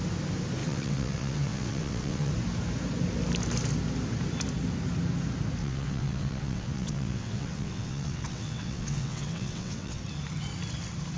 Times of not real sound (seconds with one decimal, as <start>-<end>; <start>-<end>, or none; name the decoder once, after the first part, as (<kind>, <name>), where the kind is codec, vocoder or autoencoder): 0.6-2.3 (vocoder, WaveNeXt); 5.6-10.0